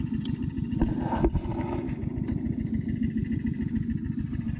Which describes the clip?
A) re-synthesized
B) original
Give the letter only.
B